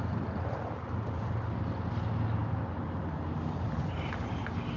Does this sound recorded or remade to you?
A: recorded